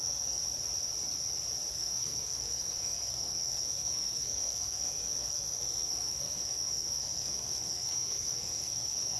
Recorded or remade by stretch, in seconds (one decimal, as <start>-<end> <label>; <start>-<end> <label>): 0.0-0.4 remade; 0.4-1.7 recorded; 1.7-9.2 remade